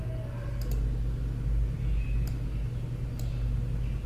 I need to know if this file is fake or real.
real